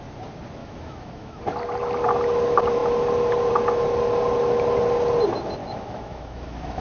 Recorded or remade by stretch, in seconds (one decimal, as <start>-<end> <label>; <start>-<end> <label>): 0.0-0.6 recorded; 0.6-1.4 remade; 1.4-5.6 recorded; 5.6-6.8 remade